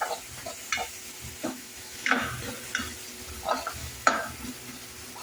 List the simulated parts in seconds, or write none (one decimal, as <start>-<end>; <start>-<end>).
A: 1.4-2.3; 3.8-4.3